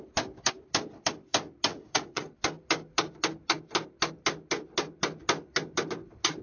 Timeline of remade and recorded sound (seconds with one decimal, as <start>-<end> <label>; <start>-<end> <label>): 0.0-1.7 recorded; 1.7-2.3 remade; 2.3-6.4 recorded